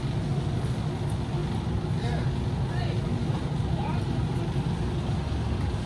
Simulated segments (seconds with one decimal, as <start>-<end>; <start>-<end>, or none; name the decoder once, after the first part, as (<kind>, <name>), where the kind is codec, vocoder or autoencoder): 3.2-4.4 (vocoder, BigVGAN v2)